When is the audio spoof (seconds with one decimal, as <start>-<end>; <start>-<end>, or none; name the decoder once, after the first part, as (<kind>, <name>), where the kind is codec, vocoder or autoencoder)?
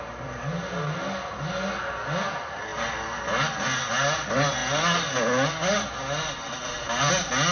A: none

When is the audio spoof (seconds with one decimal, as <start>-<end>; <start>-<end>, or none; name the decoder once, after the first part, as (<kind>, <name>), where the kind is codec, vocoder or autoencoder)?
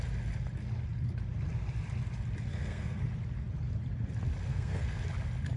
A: 2.5-3.0 (codec, SNAC); 4.5-5.0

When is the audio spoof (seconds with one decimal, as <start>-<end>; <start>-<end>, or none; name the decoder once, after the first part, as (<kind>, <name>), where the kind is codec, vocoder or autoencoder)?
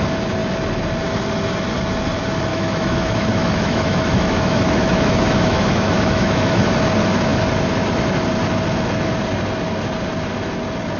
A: 2.5-6.7 (autoencoder, DAC-VAE)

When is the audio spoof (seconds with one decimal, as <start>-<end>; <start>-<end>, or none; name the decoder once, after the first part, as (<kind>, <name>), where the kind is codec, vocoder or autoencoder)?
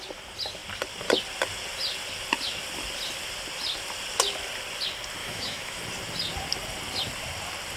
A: 5.2-5.8 (autoencoder, DAC-VAE)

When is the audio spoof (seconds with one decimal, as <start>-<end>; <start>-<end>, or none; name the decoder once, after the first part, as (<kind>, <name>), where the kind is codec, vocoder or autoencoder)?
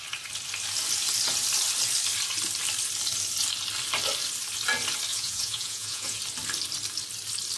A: 5.1-6.2 (vocoder, Vocos)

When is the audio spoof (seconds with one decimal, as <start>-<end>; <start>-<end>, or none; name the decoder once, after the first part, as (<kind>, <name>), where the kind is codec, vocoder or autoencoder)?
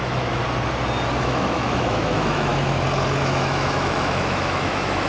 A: 0.0-0.4 (autoencoder, DAC-VAE); 1.2-2.5; 3.2-5.1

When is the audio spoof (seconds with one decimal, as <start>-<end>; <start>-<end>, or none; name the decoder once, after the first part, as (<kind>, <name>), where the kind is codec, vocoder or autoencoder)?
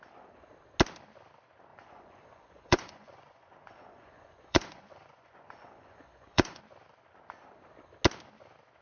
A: 1.7-6.6 (vocoder, Vocos)